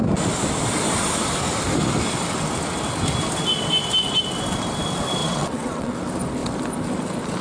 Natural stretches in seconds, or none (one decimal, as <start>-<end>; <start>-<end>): 0.0-5.2; 5.9-7.4